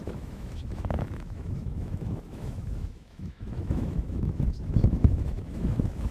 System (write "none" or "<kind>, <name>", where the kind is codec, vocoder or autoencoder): autoencoder, DAC-VAE